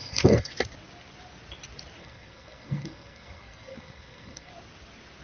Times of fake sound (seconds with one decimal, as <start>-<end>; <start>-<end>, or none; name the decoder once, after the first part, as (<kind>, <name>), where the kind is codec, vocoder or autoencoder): 0.0-0.5 (codec, SNAC); 2.0-4.5